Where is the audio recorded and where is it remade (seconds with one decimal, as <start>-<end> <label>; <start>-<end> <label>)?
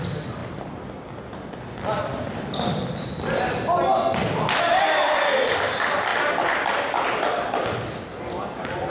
0.0-8.9 recorded